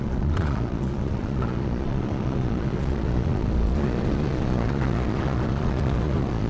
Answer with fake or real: fake